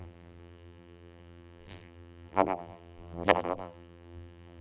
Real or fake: fake